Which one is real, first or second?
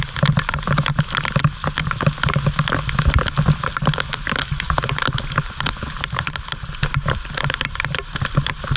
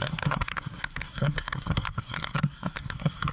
first